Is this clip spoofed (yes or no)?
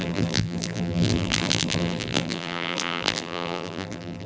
yes